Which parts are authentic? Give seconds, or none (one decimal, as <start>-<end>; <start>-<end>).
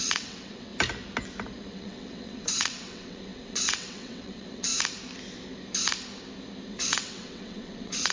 0.7-1.7; 4.7-6.7